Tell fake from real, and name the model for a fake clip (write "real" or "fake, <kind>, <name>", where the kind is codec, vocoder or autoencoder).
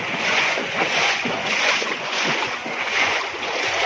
fake, vocoder, Vocos